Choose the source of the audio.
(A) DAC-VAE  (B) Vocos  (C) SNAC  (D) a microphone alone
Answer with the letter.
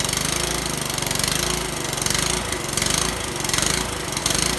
D